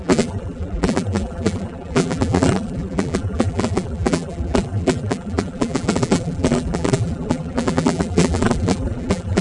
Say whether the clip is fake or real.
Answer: fake